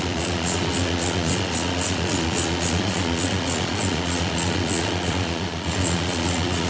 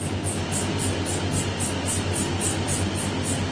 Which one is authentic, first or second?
second